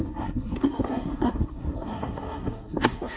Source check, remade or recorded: remade